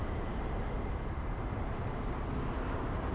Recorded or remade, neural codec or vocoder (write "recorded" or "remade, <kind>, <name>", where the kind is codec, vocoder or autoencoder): recorded